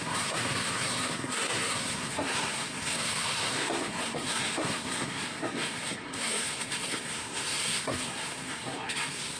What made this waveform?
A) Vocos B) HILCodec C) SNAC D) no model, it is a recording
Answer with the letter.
C